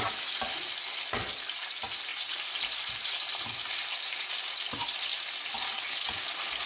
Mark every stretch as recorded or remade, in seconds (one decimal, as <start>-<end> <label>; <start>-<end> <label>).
0.0-6.7 recorded